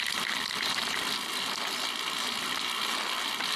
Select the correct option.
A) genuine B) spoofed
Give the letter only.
A